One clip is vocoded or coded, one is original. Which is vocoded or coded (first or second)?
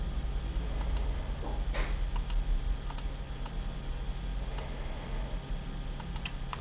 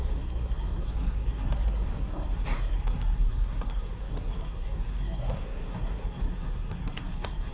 second